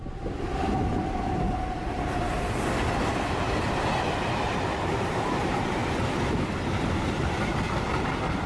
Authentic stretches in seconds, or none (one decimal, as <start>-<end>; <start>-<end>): 0.0-4.2; 5.8-7.1